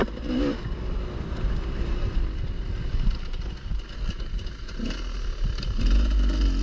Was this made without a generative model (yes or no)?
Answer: yes